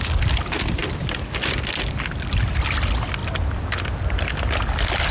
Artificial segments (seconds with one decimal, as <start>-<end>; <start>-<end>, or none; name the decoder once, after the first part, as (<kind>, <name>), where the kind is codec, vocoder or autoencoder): none